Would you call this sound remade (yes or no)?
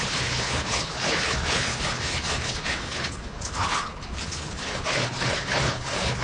yes